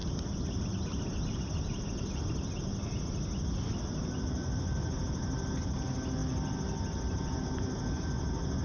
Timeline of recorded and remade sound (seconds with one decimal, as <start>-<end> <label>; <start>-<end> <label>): 0.0-8.6 recorded